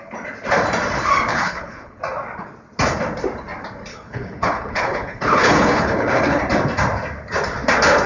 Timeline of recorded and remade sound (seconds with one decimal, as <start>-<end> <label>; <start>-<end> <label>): 0.0-1.3 recorded; 1.3-2.0 remade; 2.0-3.9 recorded; 3.9-6.4 remade; 6.4-8.1 recorded